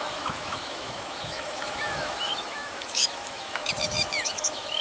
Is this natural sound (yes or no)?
no